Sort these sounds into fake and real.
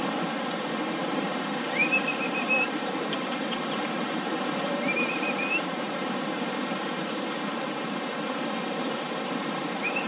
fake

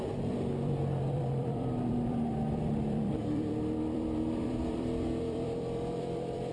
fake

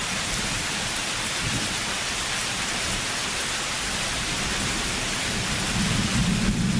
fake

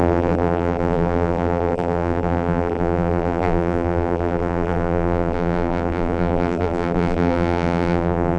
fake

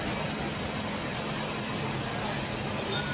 real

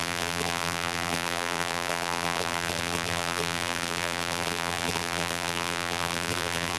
fake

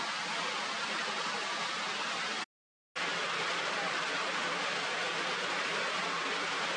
real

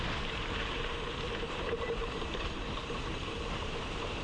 fake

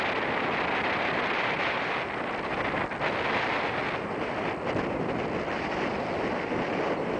real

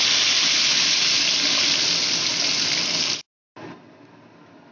real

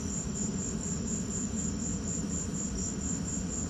fake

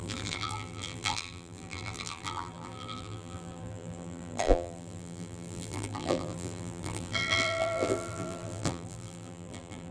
fake